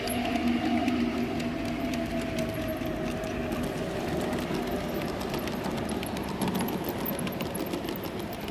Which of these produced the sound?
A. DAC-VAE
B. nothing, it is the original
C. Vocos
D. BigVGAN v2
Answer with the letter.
B